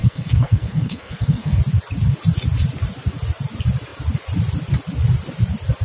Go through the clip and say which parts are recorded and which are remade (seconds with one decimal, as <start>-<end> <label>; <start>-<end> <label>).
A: 0.0-1.6 remade; 1.6-5.8 recorded